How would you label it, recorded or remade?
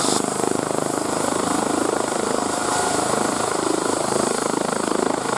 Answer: remade